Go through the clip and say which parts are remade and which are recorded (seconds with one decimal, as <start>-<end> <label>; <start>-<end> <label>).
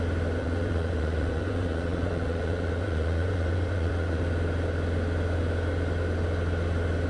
0.0-0.4 recorded; 0.4-4.2 remade; 4.2-7.1 recorded